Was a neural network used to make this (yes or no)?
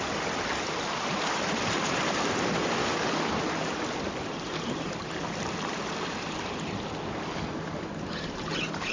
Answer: no